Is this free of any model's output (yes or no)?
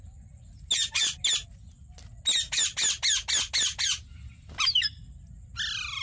yes